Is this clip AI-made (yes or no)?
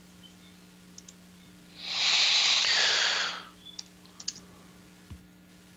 no